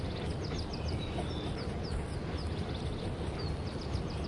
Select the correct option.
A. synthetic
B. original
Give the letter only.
B